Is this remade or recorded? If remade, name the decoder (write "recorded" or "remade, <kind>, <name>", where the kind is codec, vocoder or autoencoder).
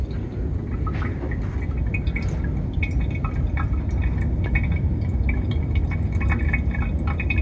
recorded